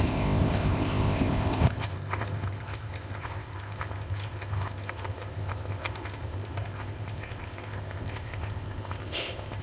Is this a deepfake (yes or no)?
yes